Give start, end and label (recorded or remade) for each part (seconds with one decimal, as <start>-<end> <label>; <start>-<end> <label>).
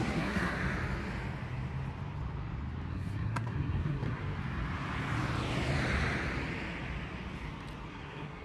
0.0-0.6 remade; 0.6-2.9 recorded; 2.9-4.2 remade; 4.2-7.9 recorded; 7.9-8.4 remade